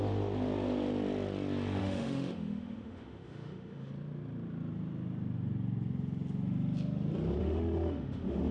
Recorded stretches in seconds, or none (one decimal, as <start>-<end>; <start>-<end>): 0.0-1.8; 3.9-7.4